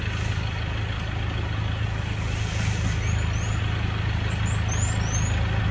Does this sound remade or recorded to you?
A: recorded